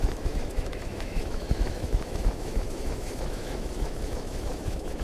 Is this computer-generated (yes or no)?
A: yes